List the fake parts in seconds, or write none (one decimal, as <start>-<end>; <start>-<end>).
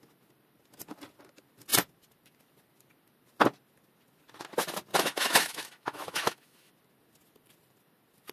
4.9-6.7